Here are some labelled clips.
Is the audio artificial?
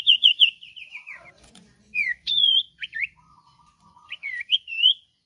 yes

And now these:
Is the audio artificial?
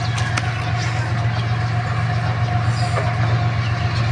no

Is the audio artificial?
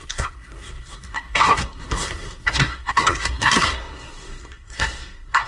yes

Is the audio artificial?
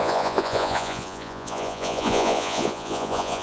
yes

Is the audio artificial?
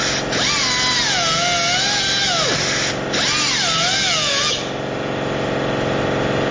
no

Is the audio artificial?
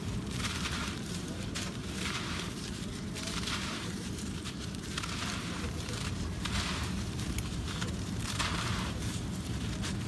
yes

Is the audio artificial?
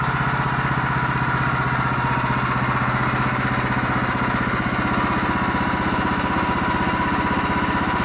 no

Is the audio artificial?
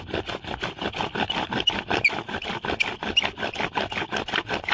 no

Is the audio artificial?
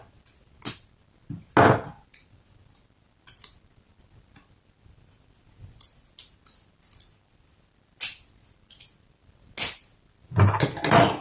no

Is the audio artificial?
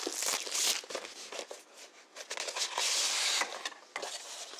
no